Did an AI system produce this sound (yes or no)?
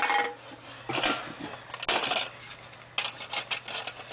no